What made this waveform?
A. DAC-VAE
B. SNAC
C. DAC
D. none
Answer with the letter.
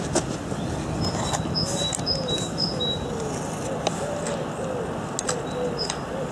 D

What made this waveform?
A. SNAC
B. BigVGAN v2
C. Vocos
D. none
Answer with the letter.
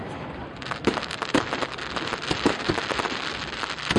D